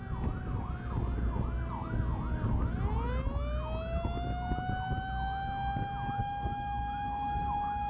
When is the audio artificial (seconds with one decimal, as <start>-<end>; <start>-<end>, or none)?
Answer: 6.2-7.9